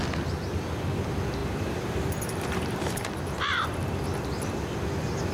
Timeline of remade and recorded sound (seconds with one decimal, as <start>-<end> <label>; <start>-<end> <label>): 0.0-1.4 recorded; 1.4-4.0 remade; 4.0-5.3 recorded